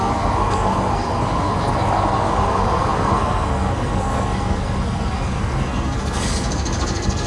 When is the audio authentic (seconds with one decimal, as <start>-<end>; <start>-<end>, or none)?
none